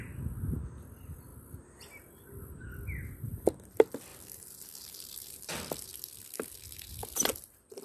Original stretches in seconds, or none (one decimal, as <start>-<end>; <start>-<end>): 0.0-7.8

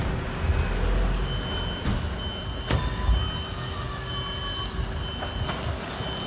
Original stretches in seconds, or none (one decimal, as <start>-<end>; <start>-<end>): 0.0-6.3

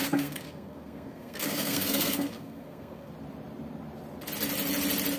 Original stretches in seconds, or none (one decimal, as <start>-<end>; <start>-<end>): 3.1-5.2

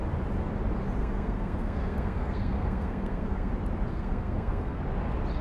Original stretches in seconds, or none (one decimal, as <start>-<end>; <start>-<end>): 0.0-1.0; 3.5-3.9; 4.8-5.4